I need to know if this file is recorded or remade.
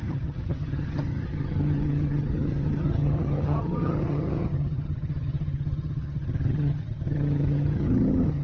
remade